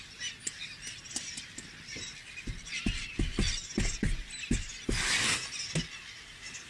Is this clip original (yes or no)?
yes